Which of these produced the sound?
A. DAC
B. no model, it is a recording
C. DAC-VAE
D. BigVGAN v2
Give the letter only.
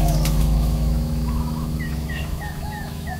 C